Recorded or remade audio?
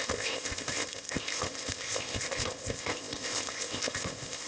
remade